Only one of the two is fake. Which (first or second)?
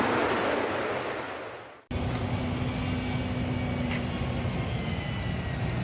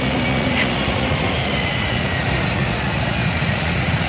second